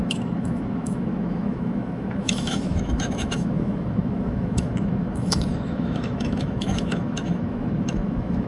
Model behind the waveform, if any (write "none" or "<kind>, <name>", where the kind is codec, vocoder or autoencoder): autoencoder, DAC-VAE